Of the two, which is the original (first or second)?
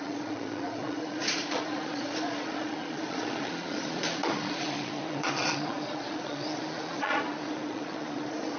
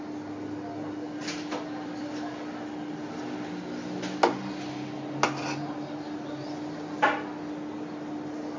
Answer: second